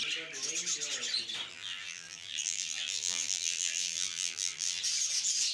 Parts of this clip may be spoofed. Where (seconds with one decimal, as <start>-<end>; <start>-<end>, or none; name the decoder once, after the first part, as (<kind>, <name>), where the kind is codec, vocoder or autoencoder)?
1.5-4.8 (vocoder, BigVGAN v2)

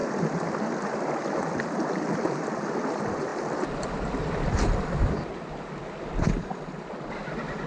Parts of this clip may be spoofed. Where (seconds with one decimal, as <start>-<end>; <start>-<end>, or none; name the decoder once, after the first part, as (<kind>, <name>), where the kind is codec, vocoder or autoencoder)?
none

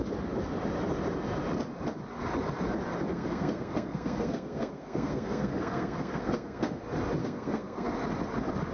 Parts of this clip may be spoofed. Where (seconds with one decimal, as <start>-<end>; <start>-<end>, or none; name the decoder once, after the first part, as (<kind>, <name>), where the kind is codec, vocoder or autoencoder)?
3.1-6.8 (codec, SNAC); 7.2-7.9

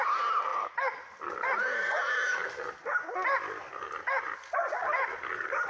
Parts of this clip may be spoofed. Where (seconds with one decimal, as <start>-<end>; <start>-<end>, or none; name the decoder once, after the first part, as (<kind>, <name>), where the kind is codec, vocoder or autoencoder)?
none